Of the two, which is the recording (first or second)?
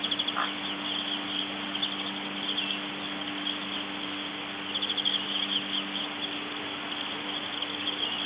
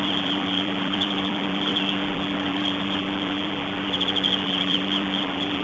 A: first